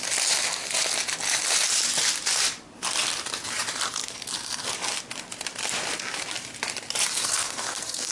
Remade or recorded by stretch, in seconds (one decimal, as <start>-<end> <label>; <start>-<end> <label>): 0.0-4.0 recorded; 4.0-4.7 remade; 4.7-7.1 recorded; 7.1-8.1 remade